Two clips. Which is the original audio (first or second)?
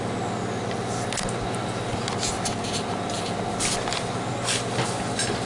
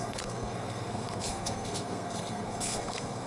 first